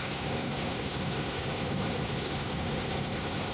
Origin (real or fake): fake